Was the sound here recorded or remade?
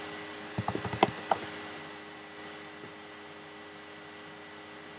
recorded